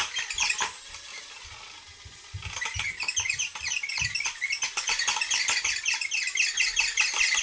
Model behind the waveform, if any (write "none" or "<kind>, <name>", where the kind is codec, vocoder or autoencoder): vocoder, BigVGAN v2